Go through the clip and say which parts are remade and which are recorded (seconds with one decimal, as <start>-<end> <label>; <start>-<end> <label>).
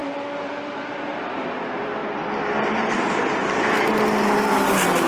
0.0-5.1 recorded